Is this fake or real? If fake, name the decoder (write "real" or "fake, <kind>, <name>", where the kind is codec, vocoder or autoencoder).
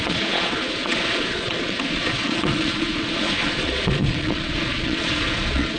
fake, vocoder, Vocos